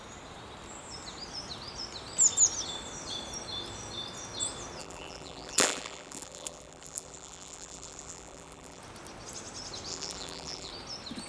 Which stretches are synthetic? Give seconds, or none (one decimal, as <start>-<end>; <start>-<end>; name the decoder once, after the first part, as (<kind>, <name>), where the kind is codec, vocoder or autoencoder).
4.8-8.8 (vocoder, BigVGAN v2); 9.9-10.7